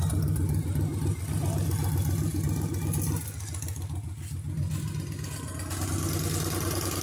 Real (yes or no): yes